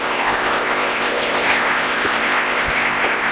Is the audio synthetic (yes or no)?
yes